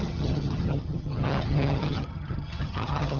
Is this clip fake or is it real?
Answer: fake